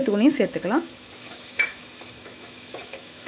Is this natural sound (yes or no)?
no